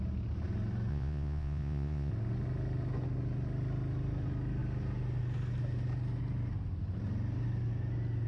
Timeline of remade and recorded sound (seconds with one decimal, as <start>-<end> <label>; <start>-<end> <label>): 0.0-0.9 recorded; 0.9-2.1 remade; 2.1-8.3 recorded